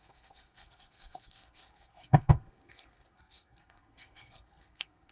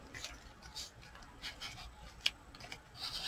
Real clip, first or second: second